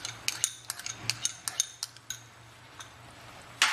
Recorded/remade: recorded